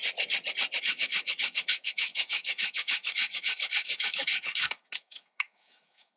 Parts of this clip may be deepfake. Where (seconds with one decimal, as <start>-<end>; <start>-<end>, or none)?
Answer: 0.8-6.2